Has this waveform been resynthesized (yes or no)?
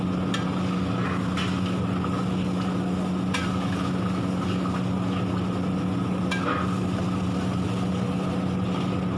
no